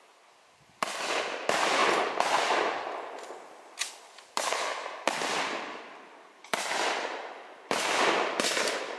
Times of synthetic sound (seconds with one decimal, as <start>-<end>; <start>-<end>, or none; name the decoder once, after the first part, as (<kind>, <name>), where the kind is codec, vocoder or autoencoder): none